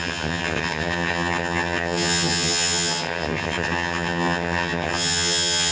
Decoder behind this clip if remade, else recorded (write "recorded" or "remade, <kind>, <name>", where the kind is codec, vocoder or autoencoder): remade, vocoder, HiFi-GAN